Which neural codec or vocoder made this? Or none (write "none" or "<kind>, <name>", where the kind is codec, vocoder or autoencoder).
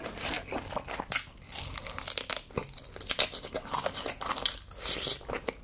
none